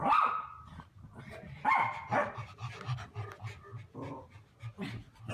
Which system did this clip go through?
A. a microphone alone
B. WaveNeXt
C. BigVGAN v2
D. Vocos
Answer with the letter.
A